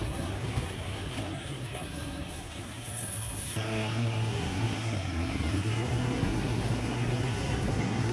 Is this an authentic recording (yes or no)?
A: no